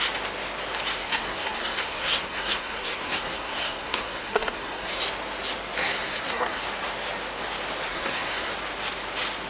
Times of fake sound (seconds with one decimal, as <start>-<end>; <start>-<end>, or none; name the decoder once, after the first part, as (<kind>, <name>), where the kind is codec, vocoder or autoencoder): 1.0-5.0 (codec, SNAC); 5.8-6.6; 7.9-8.5